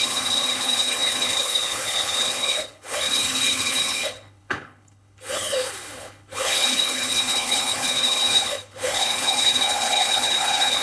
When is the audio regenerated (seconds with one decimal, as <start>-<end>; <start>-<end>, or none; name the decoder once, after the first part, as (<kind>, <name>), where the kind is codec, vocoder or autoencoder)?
0.0-10.8 (codec, HILCodec)